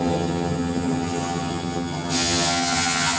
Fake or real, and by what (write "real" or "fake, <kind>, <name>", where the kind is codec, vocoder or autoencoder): fake, vocoder, HiFi-GAN